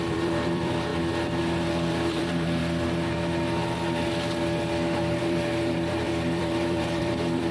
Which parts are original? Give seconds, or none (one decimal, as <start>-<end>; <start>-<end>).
0.9-1.4; 2.6-5.2

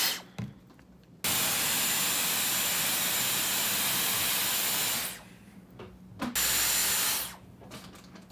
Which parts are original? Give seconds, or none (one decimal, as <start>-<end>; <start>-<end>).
0.0-8.3

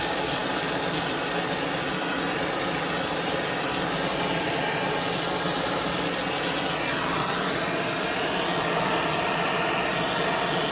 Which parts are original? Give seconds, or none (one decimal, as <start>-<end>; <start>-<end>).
0.0-10.7

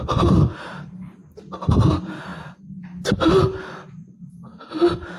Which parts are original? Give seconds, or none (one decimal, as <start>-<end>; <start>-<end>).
2.3-3.6

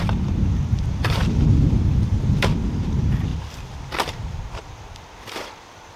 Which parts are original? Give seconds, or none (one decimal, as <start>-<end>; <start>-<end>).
none

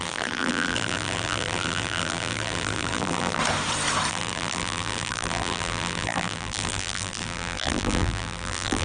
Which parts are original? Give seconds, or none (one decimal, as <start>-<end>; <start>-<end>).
3.4-4.1